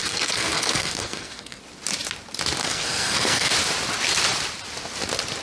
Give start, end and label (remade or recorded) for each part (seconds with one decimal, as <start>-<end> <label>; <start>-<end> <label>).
0.0-1.6 remade; 1.6-2.6 recorded; 2.6-3.5 remade; 3.5-5.4 recorded